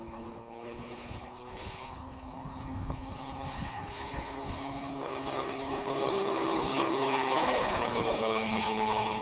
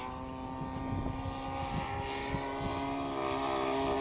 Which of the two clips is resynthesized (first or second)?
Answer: first